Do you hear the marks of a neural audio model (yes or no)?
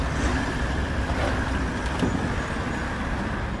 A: no